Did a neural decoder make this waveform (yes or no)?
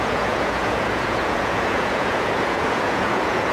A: yes